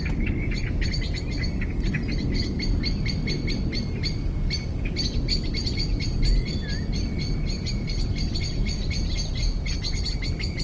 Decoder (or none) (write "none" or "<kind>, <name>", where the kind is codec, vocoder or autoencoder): none